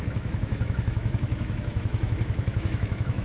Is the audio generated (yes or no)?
yes